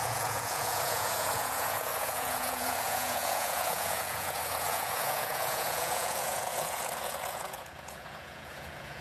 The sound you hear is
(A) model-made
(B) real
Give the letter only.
A